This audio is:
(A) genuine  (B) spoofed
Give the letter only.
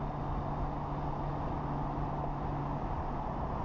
A